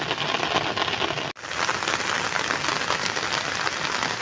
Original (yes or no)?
yes